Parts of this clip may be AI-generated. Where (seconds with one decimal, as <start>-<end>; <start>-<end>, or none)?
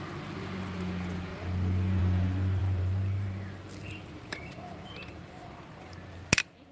2.6-5.6